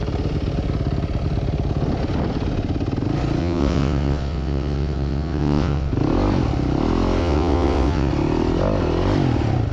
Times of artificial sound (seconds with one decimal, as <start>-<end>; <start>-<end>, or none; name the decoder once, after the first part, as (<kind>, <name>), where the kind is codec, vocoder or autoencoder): 3.4-5.9 (vocoder, WaveNeXt); 7.2-8.1